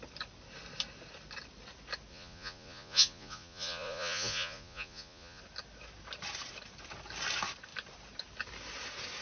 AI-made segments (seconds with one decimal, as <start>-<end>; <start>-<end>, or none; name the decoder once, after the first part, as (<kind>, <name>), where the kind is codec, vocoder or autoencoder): 2.1-5.4 (vocoder, Vocos)